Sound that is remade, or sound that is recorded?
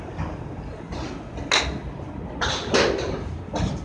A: recorded